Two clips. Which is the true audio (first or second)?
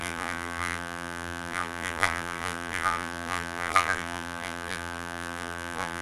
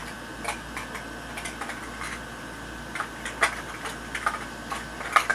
second